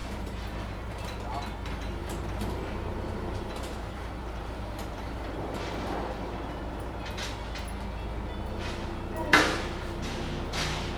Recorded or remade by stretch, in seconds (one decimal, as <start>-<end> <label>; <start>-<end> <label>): 0.0-0.9 remade; 0.9-2.0 recorded; 2.0-7.1 remade; 7.1-11.0 recorded